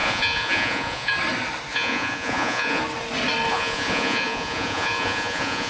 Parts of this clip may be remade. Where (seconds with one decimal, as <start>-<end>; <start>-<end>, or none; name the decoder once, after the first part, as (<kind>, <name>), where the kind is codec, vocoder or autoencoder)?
0.0-1.1 (vocoder, Vocos); 1.7-2.8; 3.5-5.7